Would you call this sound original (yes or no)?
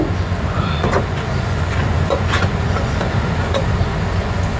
no